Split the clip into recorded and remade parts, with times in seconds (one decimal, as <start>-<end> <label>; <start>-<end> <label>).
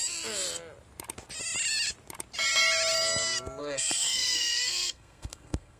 0.0-3.6 recorded; 3.6-5.8 remade